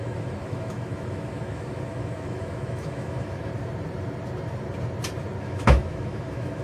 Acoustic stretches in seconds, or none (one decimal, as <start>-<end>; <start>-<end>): 3.5-5.4